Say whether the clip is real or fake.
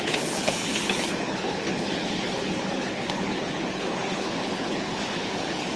fake